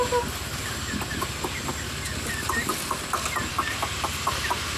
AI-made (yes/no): no